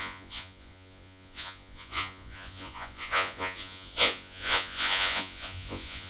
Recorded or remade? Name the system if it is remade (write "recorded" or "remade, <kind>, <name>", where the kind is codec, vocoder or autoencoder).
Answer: remade, vocoder, Vocos